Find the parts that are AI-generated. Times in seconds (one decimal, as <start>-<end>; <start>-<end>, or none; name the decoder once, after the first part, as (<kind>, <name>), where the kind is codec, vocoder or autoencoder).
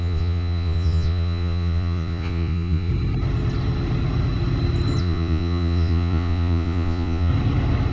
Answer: 0.0-2.9 (vocoder, Vocos); 5.0-7.3